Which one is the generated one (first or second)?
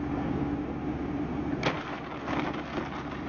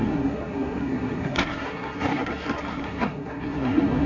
second